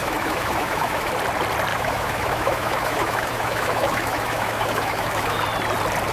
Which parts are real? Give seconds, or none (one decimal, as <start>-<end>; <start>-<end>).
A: 1.1-1.7; 5.4-6.1